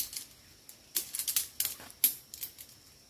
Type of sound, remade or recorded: recorded